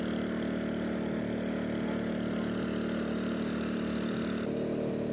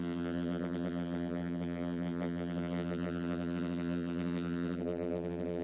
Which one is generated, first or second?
second